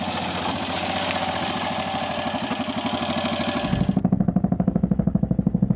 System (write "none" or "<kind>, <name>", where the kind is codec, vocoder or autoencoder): none